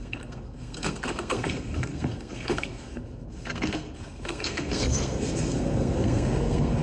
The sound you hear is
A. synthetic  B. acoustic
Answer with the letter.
A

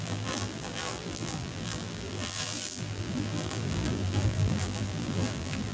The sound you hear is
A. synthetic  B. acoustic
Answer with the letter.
A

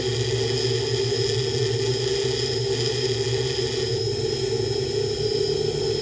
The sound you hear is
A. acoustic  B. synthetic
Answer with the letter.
A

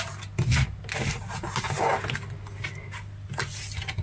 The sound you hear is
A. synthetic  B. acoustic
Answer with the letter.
B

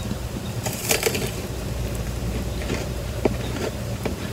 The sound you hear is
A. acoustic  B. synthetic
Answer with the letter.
B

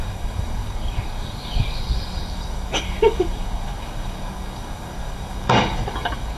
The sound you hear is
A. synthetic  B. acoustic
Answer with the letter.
A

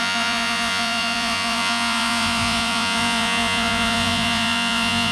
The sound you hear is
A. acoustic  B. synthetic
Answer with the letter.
B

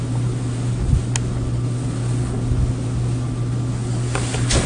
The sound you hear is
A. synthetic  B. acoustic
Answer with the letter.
B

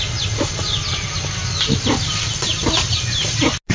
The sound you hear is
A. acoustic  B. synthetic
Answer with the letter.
A